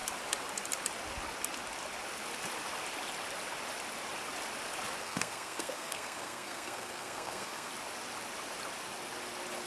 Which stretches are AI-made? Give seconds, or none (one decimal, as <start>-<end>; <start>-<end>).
5.0-7.7

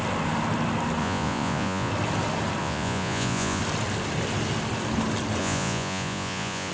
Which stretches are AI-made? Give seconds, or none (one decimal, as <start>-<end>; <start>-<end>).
1.0-1.9; 2.6-3.6; 5.4-6.7